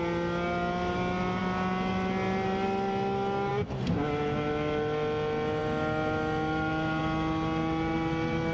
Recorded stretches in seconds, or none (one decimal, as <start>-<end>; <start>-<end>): 0.0-8.5